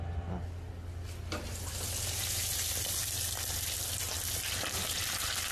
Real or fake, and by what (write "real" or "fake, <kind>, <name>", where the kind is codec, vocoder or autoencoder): real